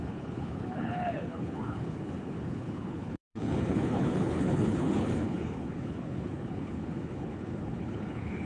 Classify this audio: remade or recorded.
remade